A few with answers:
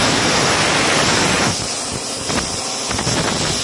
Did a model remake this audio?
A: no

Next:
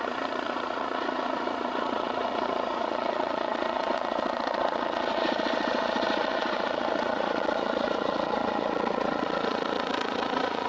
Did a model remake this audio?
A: yes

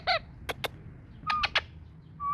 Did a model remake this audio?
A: no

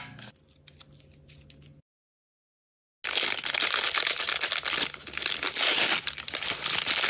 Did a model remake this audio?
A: no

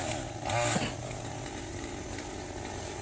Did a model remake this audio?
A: no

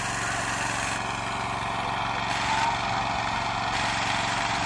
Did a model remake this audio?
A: no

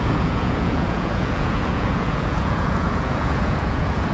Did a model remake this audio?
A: yes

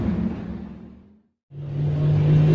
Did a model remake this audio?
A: no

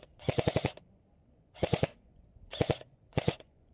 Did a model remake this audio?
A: yes